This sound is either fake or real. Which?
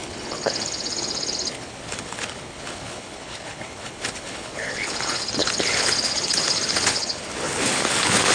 fake